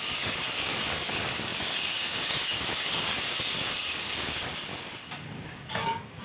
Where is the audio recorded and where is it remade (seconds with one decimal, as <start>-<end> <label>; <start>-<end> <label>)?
0.0-4.7 remade; 4.7-5.3 recorded; 5.3-6.2 remade